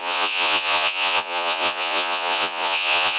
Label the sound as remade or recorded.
remade